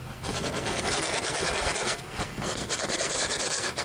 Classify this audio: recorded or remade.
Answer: remade